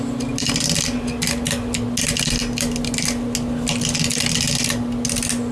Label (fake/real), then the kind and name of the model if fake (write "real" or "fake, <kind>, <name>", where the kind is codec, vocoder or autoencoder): real